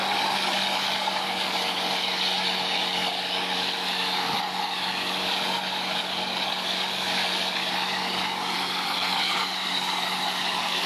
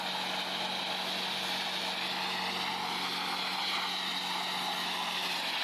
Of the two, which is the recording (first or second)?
second